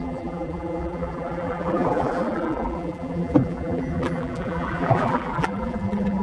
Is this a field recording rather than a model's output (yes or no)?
no